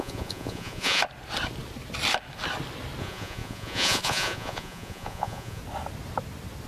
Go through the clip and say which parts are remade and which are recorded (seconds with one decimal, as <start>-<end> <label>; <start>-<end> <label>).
0.0-1.0 remade; 1.0-3.0 recorded; 3.0-5.6 remade; 5.6-6.7 recorded